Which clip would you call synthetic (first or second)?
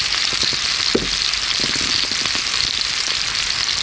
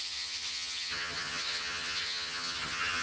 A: second